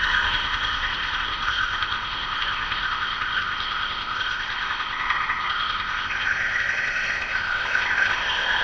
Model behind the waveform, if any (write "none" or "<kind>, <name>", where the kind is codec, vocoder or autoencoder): codec, ZipCodec